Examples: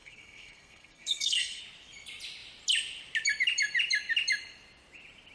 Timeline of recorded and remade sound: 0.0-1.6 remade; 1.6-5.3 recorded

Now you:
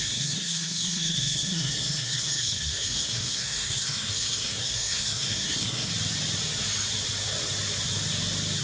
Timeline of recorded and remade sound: 0.0-5.9 remade; 5.9-8.6 recorded

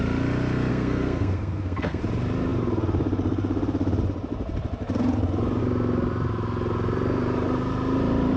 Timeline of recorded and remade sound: 0.0-0.7 recorded; 0.7-2.0 remade; 2.0-8.4 recorded